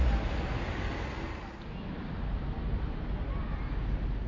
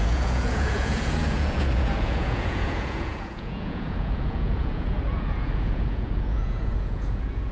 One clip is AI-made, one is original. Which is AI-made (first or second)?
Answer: second